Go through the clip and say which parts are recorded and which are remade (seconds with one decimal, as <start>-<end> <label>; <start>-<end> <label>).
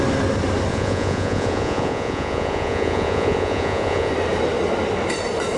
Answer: 0.0-0.7 recorded; 0.7-4.1 remade; 4.1-5.6 recorded